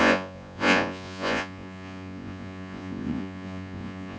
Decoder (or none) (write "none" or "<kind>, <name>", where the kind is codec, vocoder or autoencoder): vocoder, Vocos